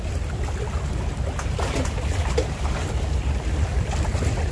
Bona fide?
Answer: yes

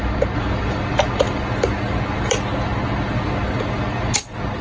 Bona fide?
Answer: yes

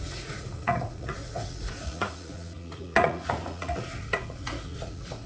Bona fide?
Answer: no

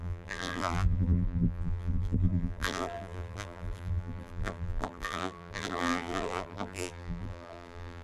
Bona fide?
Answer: no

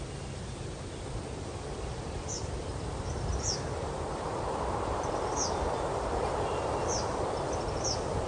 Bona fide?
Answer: yes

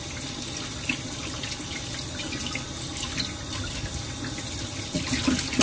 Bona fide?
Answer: yes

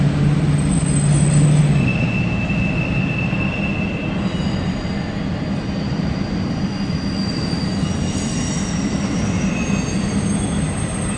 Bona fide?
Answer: yes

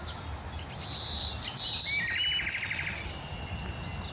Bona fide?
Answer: yes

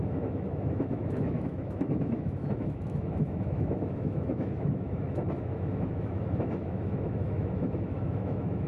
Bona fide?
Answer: no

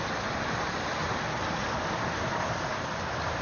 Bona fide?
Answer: yes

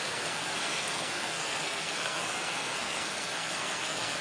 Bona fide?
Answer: no